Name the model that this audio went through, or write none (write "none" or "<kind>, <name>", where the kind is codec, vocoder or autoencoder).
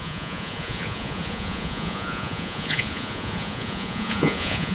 vocoder, Vocos